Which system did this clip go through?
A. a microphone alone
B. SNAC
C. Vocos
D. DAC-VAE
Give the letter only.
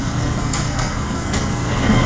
B